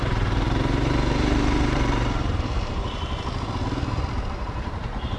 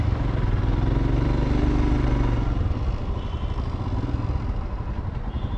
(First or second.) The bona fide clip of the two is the second